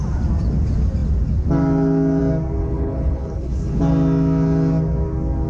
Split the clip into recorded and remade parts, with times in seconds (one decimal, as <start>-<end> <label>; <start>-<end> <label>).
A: 0.0-2.6 recorded; 2.6-3.8 remade; 3.8-5.5 recorded